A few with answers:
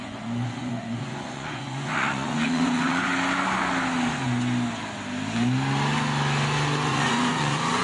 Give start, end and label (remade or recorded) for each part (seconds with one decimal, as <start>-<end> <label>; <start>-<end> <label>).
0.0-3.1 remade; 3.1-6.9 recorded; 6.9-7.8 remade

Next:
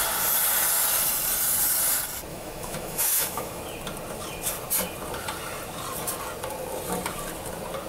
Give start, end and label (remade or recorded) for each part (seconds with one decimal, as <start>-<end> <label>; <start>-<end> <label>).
0.0-2.3 recorded; 2.3-3.6 remade; 3.6-7.9 recorded

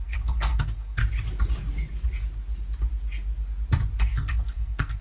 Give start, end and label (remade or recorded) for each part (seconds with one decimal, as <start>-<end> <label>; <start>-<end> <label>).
0.0-1.0 remade; 1.0-4.0 recorded; 4.0-5.0 remade

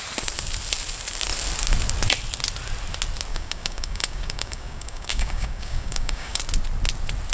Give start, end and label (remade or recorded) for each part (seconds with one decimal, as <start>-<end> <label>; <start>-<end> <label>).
0.0-3.3 recorded; 3.3-6.4 remade; 6.4-7.3 recorded

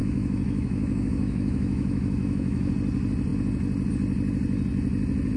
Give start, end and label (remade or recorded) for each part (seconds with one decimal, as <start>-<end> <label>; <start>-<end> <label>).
0.0-2.7 remade; 2.7-5.4 recorded

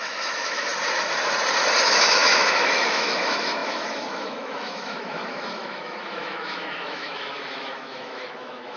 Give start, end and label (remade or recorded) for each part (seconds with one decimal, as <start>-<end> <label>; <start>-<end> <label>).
0.0-0.7 remade; 0.7-1.8 recorded; 1.8-8.8 remade

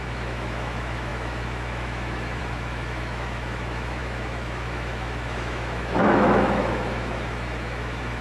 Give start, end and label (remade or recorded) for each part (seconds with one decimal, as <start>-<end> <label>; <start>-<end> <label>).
0.0-8.2 remade